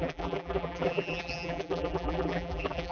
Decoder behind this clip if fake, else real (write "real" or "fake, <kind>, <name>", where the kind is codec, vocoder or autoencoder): fake, vocoder, BigVGAN v2